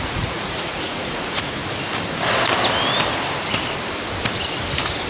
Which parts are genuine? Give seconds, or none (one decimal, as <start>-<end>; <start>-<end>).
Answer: 1.6-5.1